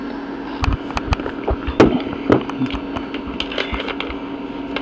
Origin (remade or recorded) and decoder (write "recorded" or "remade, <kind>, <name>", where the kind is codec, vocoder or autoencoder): recorded